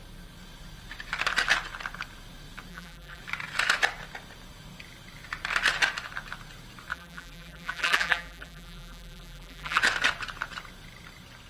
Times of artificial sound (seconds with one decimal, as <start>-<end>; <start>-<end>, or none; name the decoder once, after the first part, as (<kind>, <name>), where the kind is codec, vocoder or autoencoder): 2.7-3.2 (vocoder, BigVGAN v2); 6.9-9.8